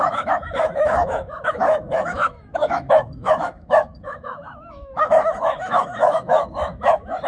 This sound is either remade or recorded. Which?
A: remade